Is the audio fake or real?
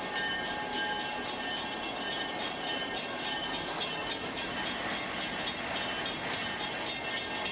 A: real